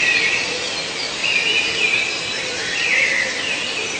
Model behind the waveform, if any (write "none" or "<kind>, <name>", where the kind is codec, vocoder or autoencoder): none